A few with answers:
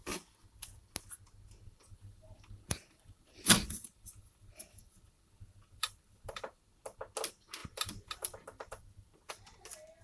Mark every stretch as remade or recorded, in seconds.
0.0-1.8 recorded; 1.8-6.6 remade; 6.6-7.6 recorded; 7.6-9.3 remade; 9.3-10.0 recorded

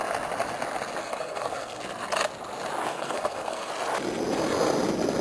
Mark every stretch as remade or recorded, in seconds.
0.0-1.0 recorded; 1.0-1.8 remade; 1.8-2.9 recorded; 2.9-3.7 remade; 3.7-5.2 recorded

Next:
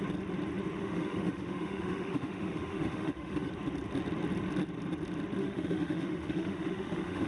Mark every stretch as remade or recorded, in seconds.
0.0-0.8 recorded; 0.8-3.5 remade; 3.5-5.4 recorded; 5.4-7.3 remade

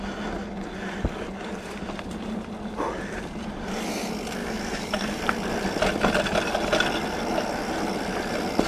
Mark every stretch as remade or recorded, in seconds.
0.0-4.4 recorded; 4.4-5.2 remade; 5.2-8.7 recorded